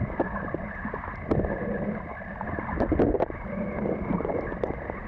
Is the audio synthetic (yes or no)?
no